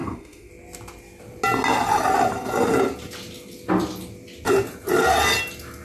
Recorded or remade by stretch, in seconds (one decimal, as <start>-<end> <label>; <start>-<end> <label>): 0.0-0.5 remade; 0.5-5.8 recorded